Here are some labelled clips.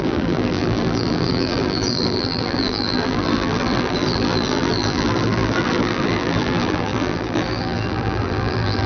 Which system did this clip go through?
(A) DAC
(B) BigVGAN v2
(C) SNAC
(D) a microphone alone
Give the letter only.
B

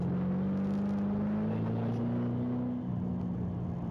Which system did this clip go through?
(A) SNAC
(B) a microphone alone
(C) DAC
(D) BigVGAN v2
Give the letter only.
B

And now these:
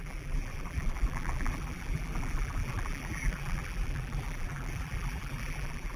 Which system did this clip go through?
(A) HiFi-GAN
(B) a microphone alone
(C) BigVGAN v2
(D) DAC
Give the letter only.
C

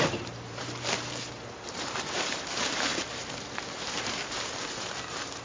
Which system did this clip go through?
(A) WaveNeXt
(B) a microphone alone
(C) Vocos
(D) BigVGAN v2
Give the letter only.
D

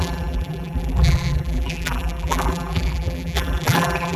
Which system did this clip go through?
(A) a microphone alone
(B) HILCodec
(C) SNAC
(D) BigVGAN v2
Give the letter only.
D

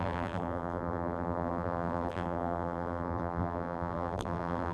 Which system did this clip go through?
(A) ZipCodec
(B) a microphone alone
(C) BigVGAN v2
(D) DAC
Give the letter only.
C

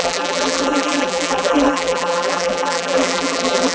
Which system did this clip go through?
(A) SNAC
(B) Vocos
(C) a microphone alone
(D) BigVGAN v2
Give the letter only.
D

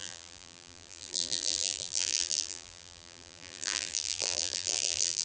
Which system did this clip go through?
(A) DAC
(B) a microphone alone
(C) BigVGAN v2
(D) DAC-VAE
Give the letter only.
C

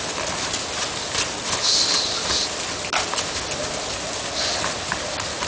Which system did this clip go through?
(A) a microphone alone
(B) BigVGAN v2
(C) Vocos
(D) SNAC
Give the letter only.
A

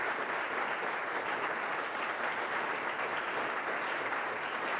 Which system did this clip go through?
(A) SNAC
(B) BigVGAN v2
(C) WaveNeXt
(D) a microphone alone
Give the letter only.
D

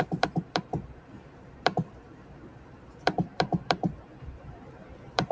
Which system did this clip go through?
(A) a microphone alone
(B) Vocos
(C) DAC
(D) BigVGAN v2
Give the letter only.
D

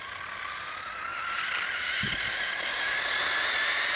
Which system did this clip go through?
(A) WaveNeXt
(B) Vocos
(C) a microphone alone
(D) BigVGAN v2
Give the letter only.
D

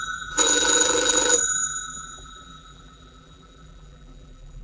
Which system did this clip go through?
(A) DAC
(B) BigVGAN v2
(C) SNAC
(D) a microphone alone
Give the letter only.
B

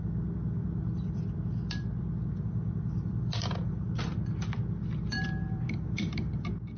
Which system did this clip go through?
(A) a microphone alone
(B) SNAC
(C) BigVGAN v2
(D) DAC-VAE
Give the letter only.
C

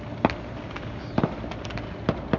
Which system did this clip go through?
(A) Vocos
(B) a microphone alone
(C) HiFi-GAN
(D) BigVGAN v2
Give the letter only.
B